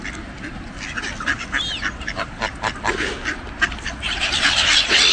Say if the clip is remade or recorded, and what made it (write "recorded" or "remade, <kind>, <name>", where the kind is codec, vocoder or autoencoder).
recorded